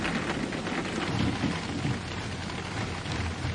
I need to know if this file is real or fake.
real